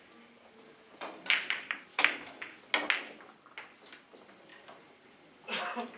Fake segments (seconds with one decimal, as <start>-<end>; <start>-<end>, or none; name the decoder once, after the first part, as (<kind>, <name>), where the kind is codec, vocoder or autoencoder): 1.9-2.6 (autoencoder, DAC-VAE)

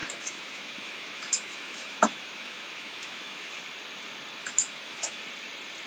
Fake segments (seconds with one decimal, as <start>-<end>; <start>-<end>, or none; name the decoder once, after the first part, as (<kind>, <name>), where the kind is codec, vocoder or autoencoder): 0.0-3.5 (autoencoder, DAC-VAE); 4.4-5.2

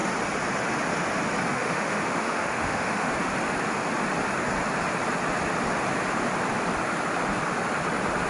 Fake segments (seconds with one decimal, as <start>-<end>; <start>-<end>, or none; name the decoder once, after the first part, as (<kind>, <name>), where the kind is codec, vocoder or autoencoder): 1.5-3.1 (autoencoder, DAC-VAE)

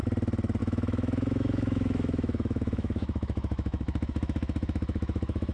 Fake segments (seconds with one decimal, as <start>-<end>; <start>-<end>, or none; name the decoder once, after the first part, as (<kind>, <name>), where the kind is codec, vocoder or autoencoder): 0.6-5.5 (autoencoder, DAC-VAE)

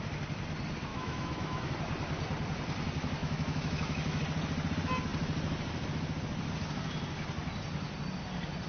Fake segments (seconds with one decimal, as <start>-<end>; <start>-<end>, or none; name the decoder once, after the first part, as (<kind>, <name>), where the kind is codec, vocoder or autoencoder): 0.9-1.7 (autoencoder, DAC-VAE); 3.2-4.2

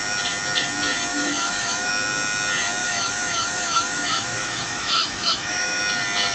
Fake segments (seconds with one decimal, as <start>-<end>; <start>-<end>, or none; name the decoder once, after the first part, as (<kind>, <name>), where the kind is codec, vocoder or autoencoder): 1.1-1.9 (autoencoder, DAC-VAE); 2.8-5.8

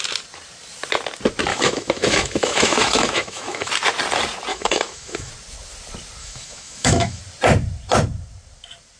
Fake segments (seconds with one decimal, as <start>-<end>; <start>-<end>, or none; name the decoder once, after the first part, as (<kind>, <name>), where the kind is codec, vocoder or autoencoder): 1.5-3.7 (autoencoder, DAC-VAE); 4.5-5.3; 6.2-7.2

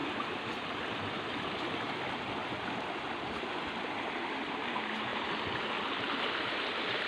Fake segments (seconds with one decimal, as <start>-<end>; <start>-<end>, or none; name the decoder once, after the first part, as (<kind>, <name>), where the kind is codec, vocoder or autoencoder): none